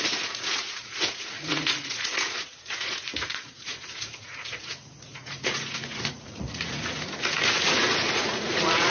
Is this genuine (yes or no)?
no